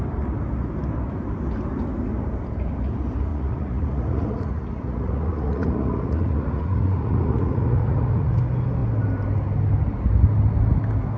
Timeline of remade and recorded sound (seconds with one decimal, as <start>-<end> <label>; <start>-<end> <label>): 0.0-3.3 recorded; 3.3-8.4 remade; 8.4-11.2 recorded

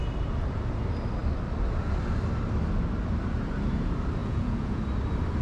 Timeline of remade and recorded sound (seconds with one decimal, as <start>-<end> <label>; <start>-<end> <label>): 0.0-4.2 recorded; 4.2-4.8 remade; 4.8-5.4 recorded

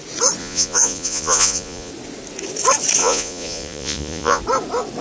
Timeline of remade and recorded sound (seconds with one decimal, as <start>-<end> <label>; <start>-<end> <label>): 0.0-0.4 recorded; 0.4-1.9 remade; 1.9-3.0 recorded; 3.0-4.4 remade; 4.4-5.0 recorded

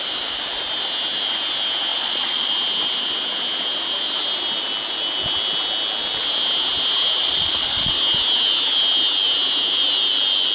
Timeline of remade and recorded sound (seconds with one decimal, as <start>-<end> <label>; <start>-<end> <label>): 0.0-1.9 recorded; 1.9-2.5 remade; 2.5-7.2 recorded; 7.2-7.9 remade; 7.9-10.5 recorded

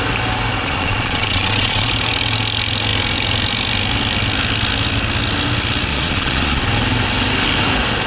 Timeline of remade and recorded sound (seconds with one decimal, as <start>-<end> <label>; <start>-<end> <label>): 0.0-0.6 recorded; 0.6-1.9 remade; 1.9-5.9 recorded; 5.9-6.6 remade; 6.6-8.1 recorded

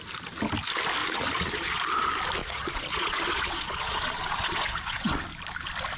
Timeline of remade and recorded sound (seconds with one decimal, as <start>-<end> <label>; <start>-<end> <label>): 0.0-1.0 recorded; 1.0-1.8 remade; 1.8-2.4 recorded; 2.4-5.1 remade; 5.1-6.0 recorded